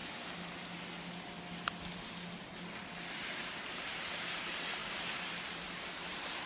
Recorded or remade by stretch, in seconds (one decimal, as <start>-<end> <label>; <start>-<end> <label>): 0.0-3.1 recorded; 3.1-6.5 remade